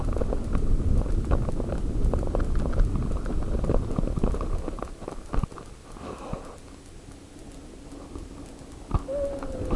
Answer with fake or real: real